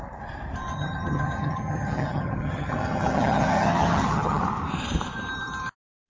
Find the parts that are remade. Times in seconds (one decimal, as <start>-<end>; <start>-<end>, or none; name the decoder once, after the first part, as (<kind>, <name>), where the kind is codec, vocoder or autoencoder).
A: 0.7-4.4 (vocoder, HiFi-GAN)